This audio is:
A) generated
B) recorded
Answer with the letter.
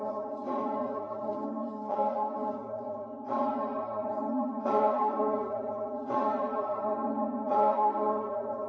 A